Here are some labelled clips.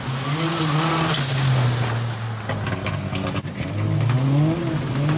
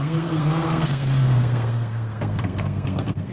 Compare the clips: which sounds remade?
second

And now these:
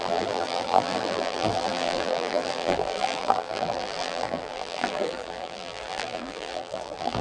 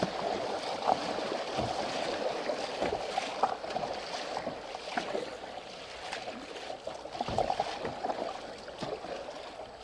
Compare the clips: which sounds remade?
first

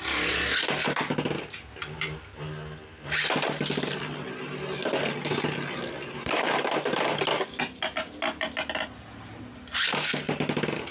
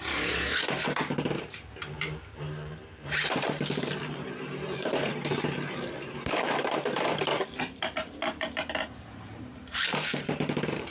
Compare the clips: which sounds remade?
second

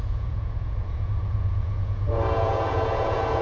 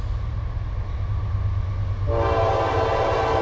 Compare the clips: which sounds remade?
first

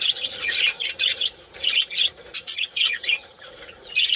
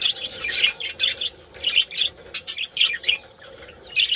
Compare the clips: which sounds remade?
first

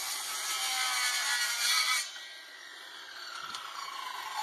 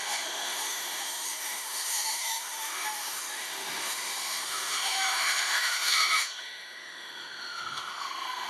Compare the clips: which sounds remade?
second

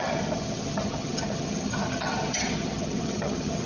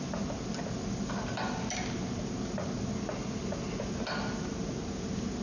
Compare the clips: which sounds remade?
first